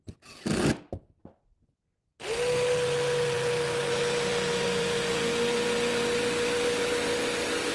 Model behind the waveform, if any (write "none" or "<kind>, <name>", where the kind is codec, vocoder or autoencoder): none